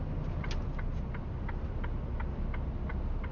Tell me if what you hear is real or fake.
real